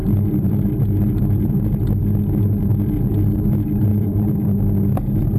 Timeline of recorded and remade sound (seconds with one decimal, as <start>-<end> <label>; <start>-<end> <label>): 0.0-1.6 remade; 1.6-3.9 recorded; 3.9-4.6 remade; 4.6-5.4 recorded